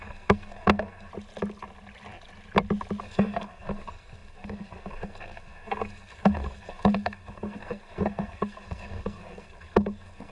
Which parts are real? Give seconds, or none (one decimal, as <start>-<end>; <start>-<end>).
1.1-3.0